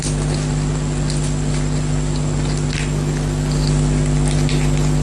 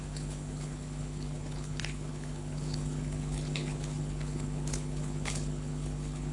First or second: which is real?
first